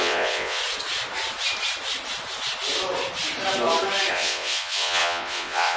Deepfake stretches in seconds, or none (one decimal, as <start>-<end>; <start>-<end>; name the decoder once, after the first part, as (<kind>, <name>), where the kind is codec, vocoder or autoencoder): 0.0-0.6 (vocoder, Vocos); 4.1-5.8